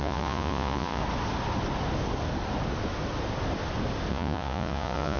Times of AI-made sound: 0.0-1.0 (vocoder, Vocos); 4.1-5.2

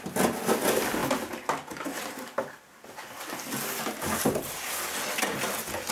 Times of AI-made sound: none

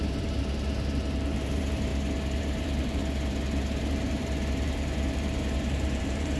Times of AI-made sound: 0.0-1.9 (vocoder, BigVGAN v2); 2.4-3.0; 3.8-6.4

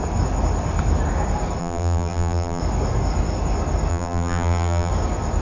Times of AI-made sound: 1.6-2.6 (vocoder, BigVGAN v2); 3.9-4.9

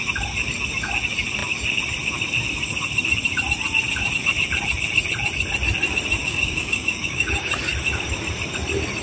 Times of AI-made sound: 6.2-7.5 (codec, DAC)